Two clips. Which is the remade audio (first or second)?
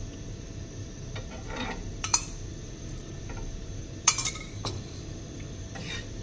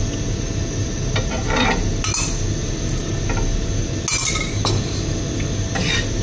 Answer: first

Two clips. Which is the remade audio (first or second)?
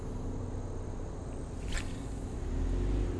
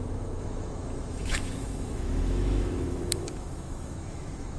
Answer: second